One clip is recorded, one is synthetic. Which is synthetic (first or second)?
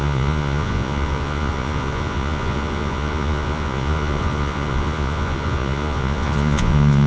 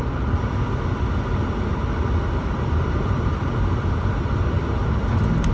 first